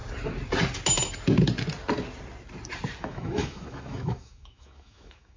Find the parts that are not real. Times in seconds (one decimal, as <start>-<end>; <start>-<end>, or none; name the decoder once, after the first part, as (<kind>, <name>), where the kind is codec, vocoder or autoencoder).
3.0-5.4 (autoencoder, DAC-VAE)